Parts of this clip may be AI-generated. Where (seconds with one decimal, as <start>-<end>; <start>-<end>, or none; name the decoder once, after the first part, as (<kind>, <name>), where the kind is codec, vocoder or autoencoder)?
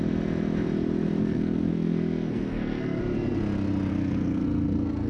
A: 1.2-3.0 (codec, SNAC); 3.9-5.1